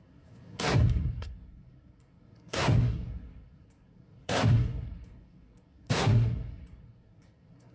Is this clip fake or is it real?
fake